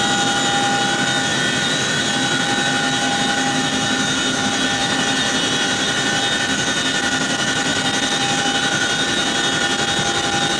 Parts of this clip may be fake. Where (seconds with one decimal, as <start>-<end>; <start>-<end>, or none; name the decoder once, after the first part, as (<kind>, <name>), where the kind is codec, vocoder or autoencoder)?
1.3-2.0 (vocoder, BigVGAN v2); 4.8-6.2; 7.7-8.4